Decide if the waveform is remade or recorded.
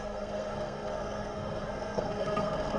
remade